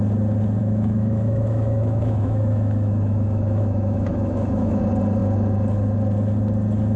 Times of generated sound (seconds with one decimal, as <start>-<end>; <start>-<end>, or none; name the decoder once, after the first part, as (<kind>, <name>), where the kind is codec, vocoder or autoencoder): 0.6-4.8 (autoencoder, DAC-VAE)